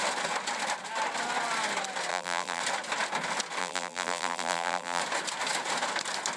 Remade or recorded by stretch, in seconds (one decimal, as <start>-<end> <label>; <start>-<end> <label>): 0.0-2.1 recorded; 2.1-2.6 remade; 2.6-3.6 recorded; 3.6-5.0 remade; 5.0-6.4 recorded